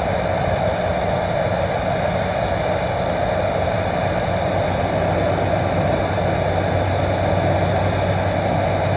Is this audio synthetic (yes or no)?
no